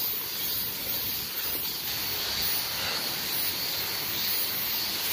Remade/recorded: recorded